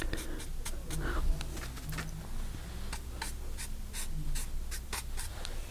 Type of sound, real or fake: real